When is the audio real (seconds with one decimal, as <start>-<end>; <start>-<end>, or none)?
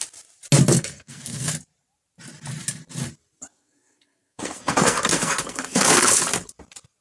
0.0-0.7; 1.5-3.5; 6.2-7.0